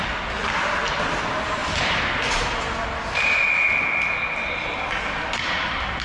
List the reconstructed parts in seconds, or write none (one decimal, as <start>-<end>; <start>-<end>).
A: none